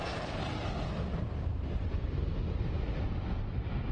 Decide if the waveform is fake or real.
real